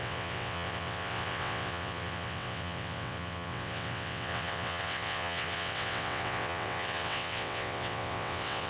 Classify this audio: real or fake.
fake